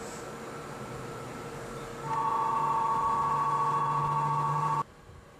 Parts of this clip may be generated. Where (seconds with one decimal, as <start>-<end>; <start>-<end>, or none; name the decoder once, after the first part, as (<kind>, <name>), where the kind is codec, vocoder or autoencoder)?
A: 0.0-1.9 (vocoder, BigVGAN v2); 4.5-5.4